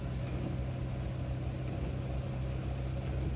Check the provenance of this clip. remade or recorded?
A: recorded